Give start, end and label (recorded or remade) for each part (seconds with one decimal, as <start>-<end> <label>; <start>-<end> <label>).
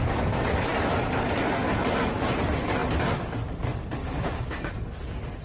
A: 0.0-4.0 recorded; 4.0-4.7 remade; 4.7-5.4 recorded